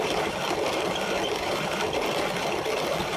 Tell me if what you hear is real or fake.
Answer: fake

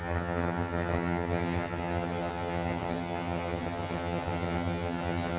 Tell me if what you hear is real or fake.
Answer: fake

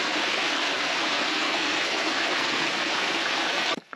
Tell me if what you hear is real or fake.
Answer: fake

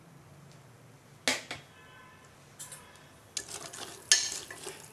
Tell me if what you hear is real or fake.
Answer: real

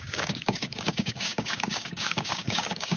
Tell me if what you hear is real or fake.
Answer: fake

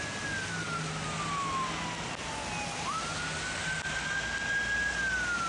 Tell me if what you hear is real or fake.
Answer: real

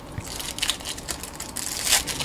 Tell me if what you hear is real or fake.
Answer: real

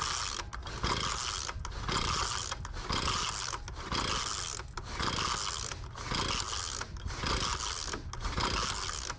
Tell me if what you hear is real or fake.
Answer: real